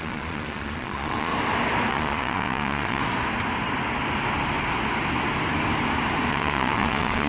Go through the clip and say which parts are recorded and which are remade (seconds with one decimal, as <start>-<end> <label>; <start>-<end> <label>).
0.0-1.3 remade; 1.3-1.9 recorded; 1.9-3.0 remade; 3.0-6.3 recorded; 6.3-7.3 remade